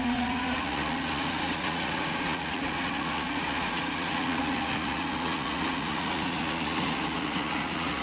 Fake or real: fake